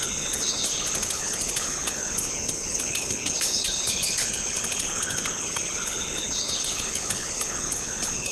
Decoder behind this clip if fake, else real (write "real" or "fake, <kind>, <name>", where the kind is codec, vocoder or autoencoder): fake, codec, HILCodec